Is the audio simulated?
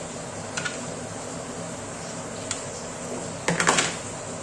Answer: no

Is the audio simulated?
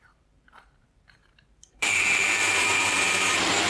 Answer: yes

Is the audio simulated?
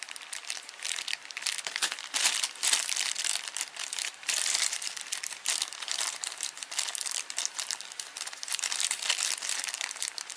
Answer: yes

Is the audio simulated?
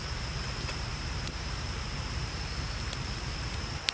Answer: yes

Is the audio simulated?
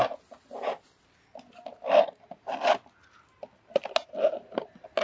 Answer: no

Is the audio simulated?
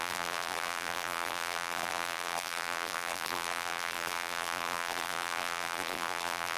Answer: yes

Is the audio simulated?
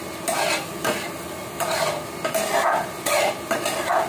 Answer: no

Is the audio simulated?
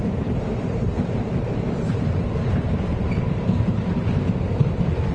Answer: yes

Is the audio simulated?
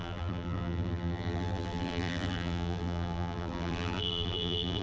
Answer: yes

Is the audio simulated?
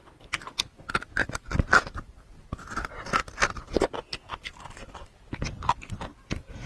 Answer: yes